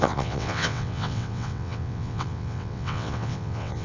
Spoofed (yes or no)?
yes